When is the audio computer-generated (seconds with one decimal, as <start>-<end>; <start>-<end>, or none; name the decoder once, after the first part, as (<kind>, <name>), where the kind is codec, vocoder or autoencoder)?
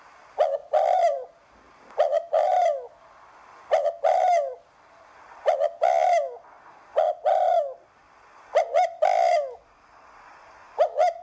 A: 0.6-1.3 (vocoder, BigVGAN v2)